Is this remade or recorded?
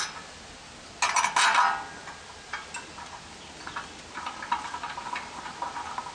recorded